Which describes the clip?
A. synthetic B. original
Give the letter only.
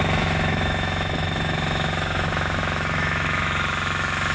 A